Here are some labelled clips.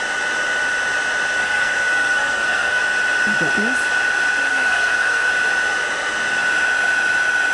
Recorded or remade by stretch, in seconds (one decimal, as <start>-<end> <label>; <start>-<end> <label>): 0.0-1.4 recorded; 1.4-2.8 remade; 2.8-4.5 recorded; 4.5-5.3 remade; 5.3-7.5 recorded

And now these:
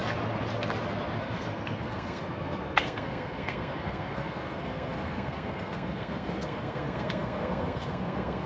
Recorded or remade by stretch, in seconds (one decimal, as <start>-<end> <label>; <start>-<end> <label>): 0.0-1.2 recorded; 1.2-8.5 remade

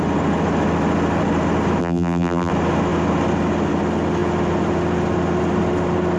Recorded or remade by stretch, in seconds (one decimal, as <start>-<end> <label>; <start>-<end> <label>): 0.0-1.8 recorded; 1.8-2.5 remade; 2.5-6.2 recorded